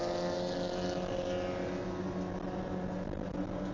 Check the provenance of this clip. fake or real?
real